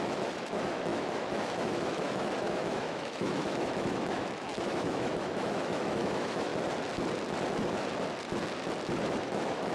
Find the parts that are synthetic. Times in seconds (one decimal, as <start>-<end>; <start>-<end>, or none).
0.0-6.5; 9.2-9.7